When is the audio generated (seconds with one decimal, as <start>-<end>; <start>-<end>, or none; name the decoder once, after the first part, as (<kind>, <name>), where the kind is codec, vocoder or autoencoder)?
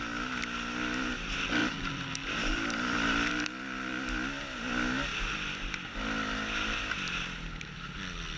1.6-3.3 (vocoder, BigVGAN v2); 5.1-5.7